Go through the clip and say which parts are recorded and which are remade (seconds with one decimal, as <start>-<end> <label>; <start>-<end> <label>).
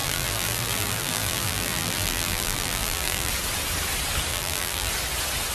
0.0-3.3 remade; 3.3-4.3 recorded; 4.3-4.9 remade; 4.9-5.5 recorded